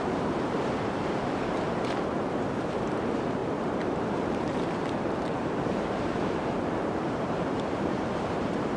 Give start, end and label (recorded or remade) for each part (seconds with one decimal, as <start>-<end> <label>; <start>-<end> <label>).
0.0-8.8 remade